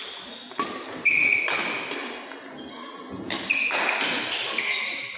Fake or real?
real